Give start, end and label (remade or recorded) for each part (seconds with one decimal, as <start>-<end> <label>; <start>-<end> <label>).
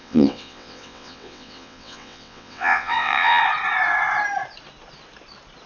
0.0-3.4 remade; 3.4-5.7 recorded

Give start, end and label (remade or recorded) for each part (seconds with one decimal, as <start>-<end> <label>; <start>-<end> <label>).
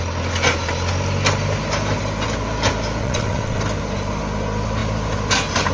0.0-3.0 recorded; 3.0-3.6 remade; 3.6-5.7 recorded